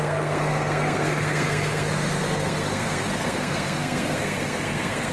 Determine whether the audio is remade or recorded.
remade